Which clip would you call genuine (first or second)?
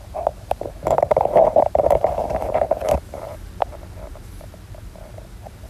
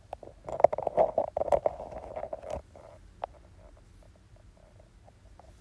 second